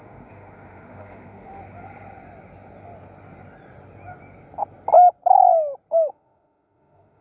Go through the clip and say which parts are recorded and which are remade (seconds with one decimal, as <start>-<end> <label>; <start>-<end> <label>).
0.0-1.6 remade; 1.6-5.9 recorded; 5.9-7.2 remade